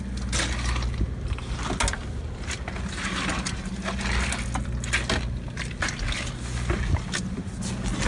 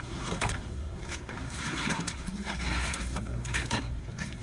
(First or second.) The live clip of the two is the first